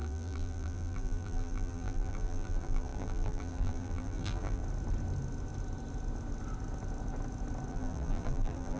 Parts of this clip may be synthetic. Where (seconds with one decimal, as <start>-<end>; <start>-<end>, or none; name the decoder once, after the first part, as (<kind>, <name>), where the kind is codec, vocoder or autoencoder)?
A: 0.0-4.6 (vocoder, BigVGAN v2); 7.7-8.8